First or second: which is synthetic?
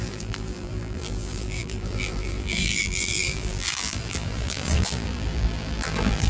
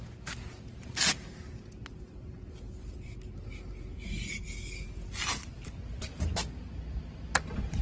first